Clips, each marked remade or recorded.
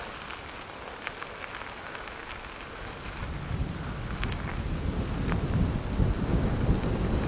recorded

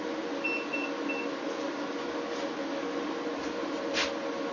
recorded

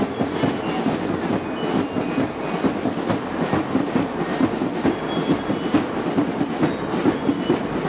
recorded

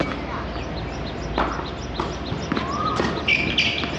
recorded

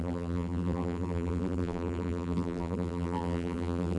remade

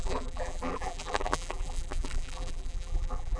remade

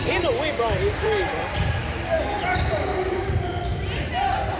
remade